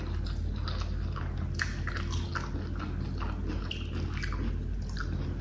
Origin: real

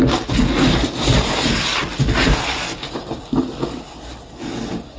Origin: real